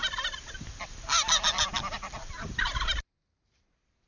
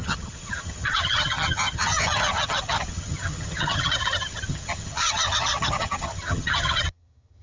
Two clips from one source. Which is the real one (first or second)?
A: first